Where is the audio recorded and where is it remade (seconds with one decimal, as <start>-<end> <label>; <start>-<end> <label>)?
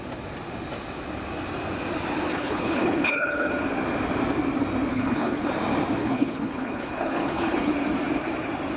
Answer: 0.0-2.3 recorded; 2.3-3.5 remade; 3.5-4.9 recorded; 4.9-5.5 remade; 5.5-6.0 recorded; 6.0-7.7 remade; 7.7-8.8 recorded